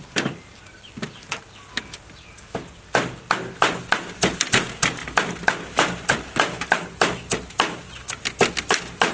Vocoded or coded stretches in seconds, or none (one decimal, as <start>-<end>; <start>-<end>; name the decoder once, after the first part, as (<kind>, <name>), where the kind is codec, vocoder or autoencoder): none